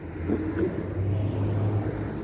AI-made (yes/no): no